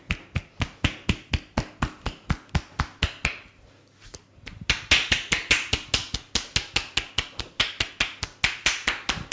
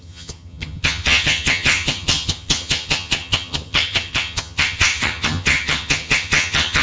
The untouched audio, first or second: first